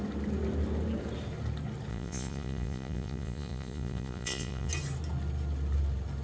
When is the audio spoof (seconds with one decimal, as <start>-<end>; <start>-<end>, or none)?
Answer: 1.9-4.7